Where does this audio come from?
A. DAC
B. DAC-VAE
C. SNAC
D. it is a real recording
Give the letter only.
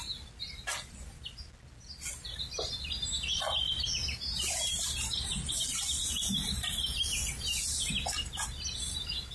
D